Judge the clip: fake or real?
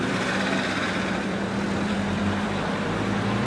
fake